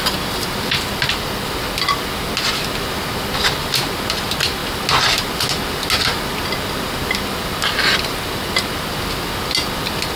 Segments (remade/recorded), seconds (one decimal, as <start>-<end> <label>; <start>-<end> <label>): 0.0-10.2 recorded